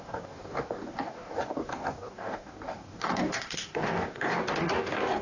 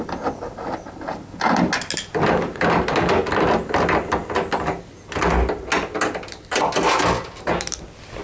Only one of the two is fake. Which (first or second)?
first